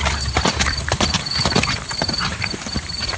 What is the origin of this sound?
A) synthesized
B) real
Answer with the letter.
A